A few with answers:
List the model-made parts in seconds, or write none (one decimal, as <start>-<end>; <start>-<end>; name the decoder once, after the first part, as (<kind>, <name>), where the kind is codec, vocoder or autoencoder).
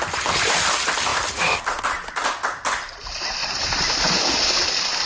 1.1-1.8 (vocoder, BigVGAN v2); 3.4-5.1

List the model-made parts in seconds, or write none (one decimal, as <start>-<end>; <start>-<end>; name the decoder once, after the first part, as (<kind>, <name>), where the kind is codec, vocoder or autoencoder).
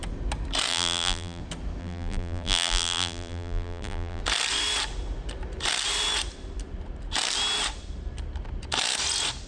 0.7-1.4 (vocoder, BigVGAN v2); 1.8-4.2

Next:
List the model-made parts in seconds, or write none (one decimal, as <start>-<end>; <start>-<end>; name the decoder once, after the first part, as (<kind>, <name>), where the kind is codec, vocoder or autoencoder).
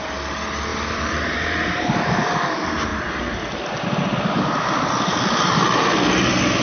0.7-2.0 (vocoder, BigVGAN v2); 2.9-4.5; 5.1-5.6